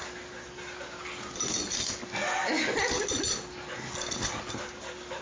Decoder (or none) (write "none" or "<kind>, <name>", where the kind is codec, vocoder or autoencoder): none